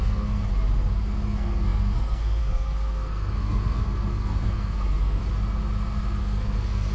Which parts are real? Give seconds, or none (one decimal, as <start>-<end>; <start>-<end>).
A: 0.5-1.0; 5.2-6.2